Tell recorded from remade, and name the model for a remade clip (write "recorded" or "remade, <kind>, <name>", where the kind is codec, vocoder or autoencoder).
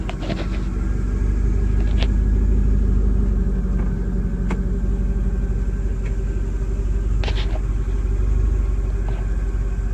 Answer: recorded